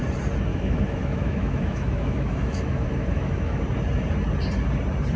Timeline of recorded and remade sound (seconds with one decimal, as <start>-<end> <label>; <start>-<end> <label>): 0.0-0.5 recorded; 0.5-3.6 remade; 3.6-5.2 recorded